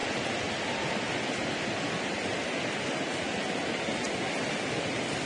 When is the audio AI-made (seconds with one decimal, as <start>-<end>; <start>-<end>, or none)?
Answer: none